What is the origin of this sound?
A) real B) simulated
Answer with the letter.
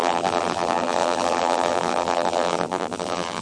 B